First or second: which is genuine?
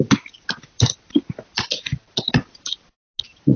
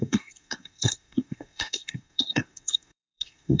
first